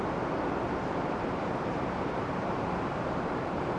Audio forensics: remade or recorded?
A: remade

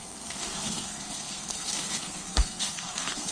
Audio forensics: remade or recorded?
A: remade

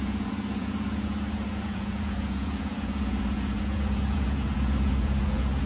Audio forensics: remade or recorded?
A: remade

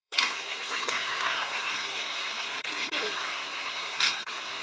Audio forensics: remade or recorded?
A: remade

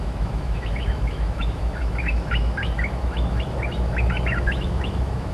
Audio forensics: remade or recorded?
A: remade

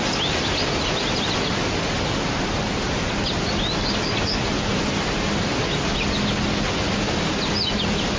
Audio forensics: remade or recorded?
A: recorded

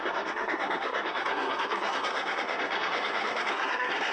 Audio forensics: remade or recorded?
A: remade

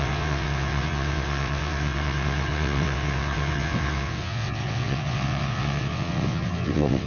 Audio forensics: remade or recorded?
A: remade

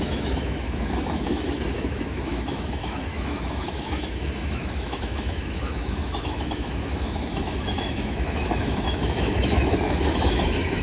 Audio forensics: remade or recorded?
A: remade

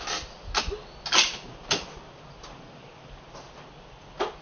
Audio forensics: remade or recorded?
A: recorded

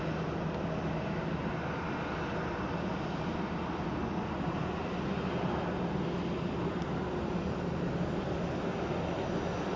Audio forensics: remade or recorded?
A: recorded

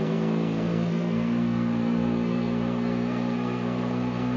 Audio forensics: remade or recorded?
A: remade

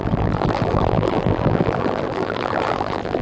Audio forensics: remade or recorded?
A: remade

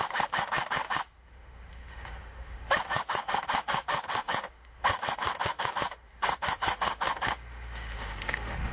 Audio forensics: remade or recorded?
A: remade